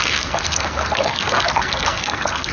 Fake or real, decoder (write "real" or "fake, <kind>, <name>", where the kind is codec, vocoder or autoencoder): fake, codec, SNAC